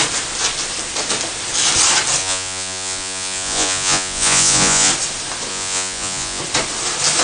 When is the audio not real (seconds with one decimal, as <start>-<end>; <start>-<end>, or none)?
2.2-4.9; 5.5-6.4